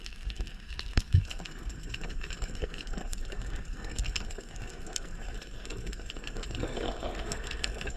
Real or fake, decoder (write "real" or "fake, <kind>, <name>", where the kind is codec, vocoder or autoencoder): fake, codec, SNAC